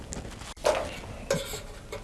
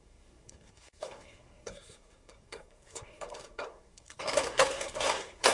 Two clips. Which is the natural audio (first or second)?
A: first